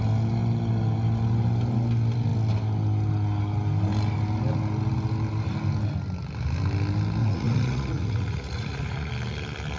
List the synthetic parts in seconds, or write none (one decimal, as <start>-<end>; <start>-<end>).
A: 7.2-9.1